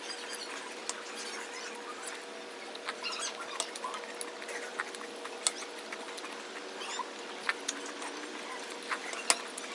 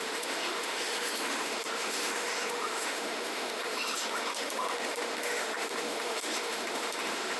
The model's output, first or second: second